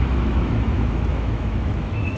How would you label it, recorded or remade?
remade